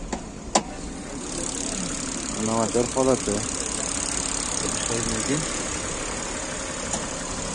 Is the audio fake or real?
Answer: real